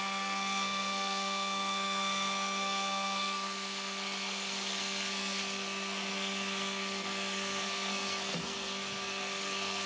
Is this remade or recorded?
remade